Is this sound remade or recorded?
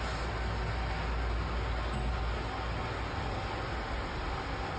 recorded